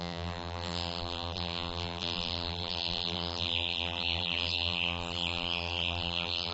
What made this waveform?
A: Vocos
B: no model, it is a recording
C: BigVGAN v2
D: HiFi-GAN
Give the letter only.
C